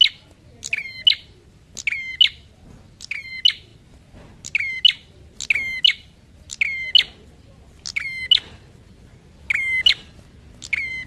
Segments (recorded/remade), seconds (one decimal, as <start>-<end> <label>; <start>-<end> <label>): 0.0-11.1 recorded